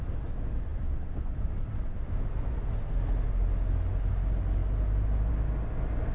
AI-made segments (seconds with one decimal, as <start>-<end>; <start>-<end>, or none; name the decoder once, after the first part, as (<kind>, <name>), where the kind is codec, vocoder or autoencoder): none